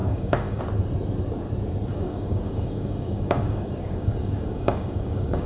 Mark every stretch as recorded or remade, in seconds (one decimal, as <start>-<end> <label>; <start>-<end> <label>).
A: 0.0-0.6 remade; 0.6-1.9 recorded; 1.9-5.5 remade